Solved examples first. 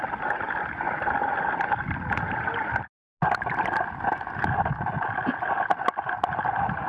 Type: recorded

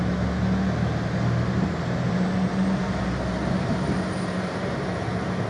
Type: recorded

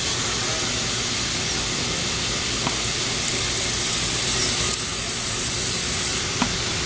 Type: recorded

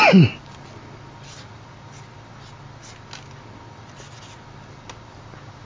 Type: recorded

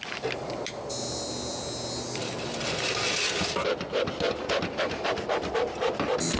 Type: recorded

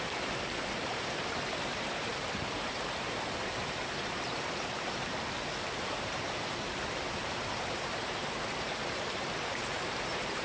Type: remade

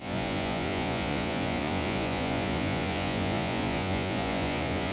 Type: remade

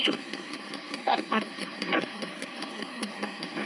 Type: remade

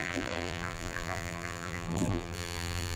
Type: remade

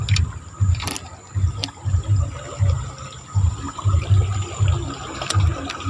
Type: recorded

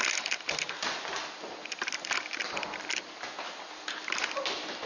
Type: recorded